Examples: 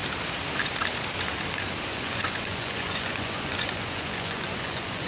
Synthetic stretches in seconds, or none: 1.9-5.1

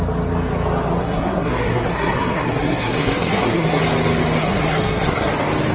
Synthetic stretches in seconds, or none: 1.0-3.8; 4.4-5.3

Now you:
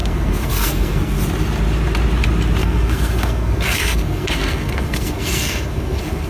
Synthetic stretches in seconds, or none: 0.0-1.2; 2.6-6.3

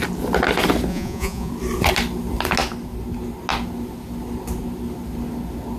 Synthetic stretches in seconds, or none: 0.9-1.5

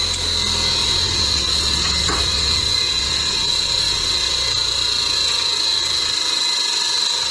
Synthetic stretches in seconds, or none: 0.8-4.3

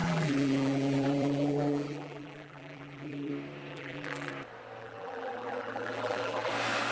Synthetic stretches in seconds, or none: 0.0-3.3; 3.7-4.3; 4.8-6.5

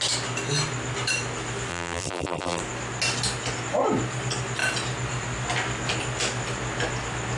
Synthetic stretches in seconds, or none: 1.7-2.6

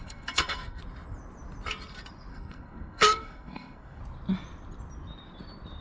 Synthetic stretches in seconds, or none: 0.0-0.8; 2.3-4.0